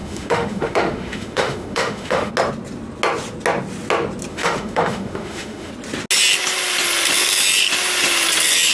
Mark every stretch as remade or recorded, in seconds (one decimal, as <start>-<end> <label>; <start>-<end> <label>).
0.0-2.3 remade; 2.3-4.3 recorded; 4.3-5.7 remade; 5.7-8.7 recorded

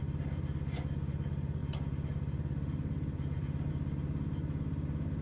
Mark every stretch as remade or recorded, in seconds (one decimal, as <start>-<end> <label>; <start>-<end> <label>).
0.0-5.2 recorded

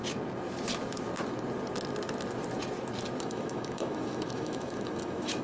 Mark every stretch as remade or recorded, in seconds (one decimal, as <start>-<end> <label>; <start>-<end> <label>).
0.0-3.2 recorded; 3.2-5.4 remade

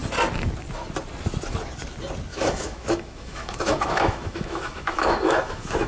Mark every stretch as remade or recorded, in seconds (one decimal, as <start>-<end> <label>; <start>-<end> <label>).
0.0-2.3 recorded; 2.3-5.9 remade

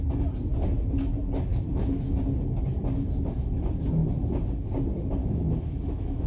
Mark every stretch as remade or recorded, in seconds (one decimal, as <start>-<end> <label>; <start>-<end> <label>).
0.0-1.5 recorded; 1.5-2.2 remade; 2.2-5.2 recorded; 5.2-6.3 remade

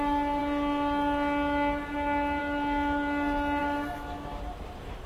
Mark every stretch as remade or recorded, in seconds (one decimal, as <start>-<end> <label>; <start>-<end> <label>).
0.0-3.6 recorded; 3.6-4.4 remade; 4.4-5.1 recorded